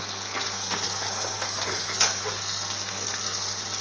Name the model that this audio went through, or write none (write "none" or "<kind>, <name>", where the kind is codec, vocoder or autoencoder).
codec, SNAC